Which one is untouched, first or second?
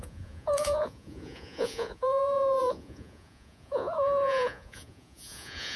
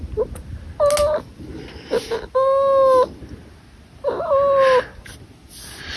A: second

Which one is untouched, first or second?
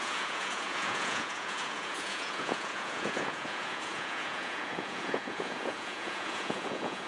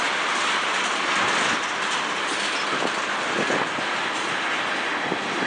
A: second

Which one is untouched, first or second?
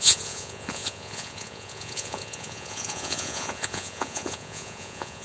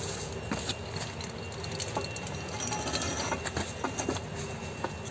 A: second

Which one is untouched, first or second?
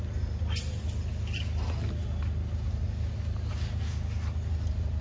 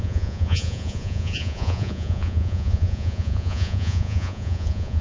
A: first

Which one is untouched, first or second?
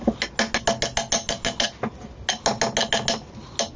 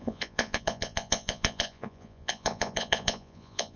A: first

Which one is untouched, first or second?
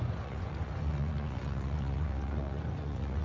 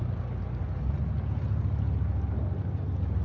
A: second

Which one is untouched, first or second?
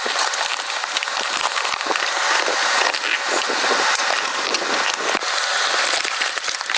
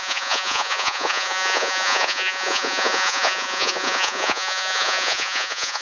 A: first